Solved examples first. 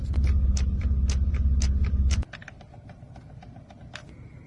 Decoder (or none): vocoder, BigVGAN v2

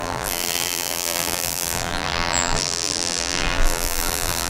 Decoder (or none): vocoder, BigVGAN v2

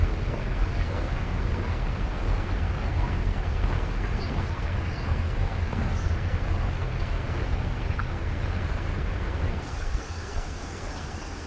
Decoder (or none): codec, SNAC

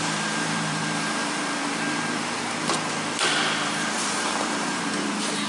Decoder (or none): vocoder, BigVGAN v2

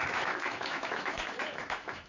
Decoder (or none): autoencoder, DAC-VAE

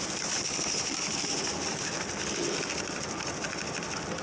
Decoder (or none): none